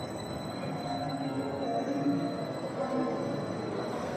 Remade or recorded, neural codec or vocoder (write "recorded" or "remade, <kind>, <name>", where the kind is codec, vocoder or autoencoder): remade, codec, SNAC